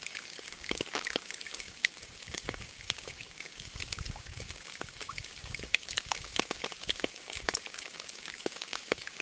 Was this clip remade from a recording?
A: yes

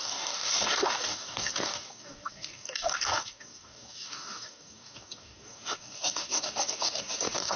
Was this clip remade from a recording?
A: yes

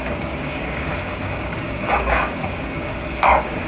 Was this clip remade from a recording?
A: yes